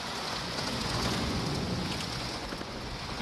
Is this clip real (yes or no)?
no